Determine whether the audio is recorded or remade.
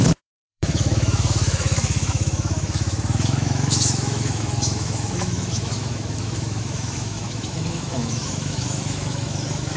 remade